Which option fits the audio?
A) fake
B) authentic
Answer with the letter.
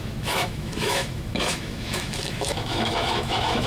A